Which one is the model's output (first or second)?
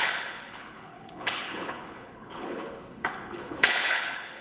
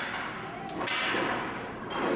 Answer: first